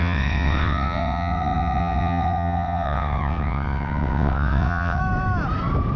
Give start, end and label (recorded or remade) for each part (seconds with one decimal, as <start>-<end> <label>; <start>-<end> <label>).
0.0-5.0 remade; 5.0-6.0 recorded